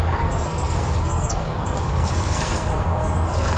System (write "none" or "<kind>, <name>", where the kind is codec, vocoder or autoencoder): codec, SNAC